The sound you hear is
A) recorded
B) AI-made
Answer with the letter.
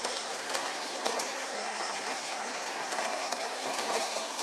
B